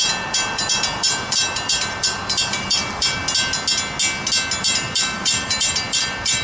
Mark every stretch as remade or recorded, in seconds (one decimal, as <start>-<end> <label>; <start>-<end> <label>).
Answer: 0.0-3.2 remade; 3.2-4.6 recorded; 4.6-6.4 remade